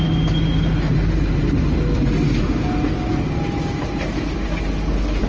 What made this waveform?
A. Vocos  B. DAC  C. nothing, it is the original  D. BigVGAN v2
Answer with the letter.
C